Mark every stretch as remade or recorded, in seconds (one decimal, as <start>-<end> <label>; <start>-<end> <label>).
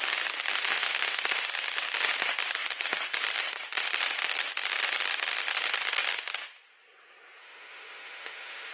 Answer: 0.0-0.5 recorded; 0.5-1.2 remade; 1.2-7.4 recorded; 7.4-8.7 remade